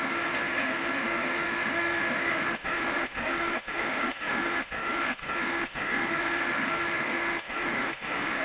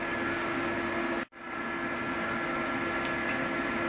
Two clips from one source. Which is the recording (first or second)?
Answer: second